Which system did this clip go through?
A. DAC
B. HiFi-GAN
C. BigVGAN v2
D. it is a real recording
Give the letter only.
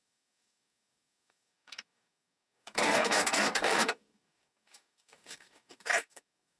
A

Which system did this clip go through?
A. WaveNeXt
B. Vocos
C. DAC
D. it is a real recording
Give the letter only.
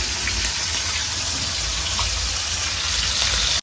D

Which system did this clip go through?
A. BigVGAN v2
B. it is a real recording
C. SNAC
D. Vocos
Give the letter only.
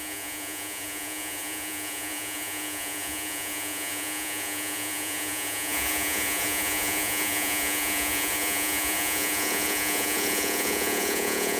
D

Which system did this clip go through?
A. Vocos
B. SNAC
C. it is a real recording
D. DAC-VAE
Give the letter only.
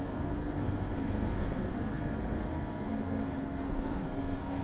B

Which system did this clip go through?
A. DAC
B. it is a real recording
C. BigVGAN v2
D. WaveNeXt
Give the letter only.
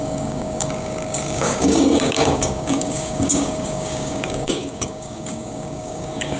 A